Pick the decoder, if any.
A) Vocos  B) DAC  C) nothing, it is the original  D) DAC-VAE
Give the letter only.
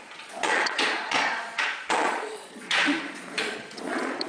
A